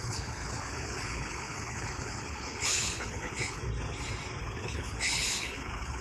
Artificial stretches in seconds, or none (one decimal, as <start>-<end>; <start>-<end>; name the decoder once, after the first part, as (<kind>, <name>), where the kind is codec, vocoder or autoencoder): 0.0-3.6 (codec, HILCodec); 4.4-6.0